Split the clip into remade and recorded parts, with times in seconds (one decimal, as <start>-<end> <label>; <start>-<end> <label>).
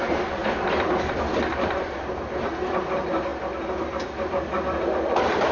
0.0-0.4 recorded; 0.4-1.9 remade; 1.9-5.5 recorded